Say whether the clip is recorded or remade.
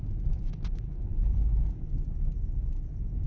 recorded